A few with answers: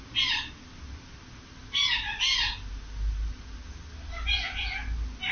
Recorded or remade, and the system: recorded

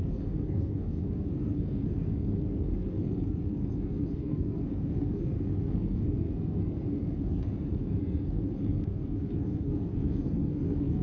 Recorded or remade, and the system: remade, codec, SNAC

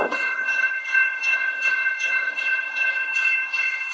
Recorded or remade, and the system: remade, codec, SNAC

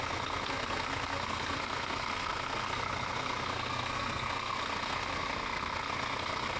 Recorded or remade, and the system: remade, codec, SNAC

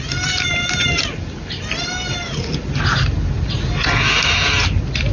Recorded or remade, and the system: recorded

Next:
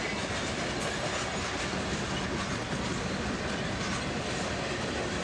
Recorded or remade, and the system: recorded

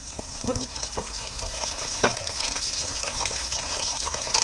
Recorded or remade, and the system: remade, codec, SNAC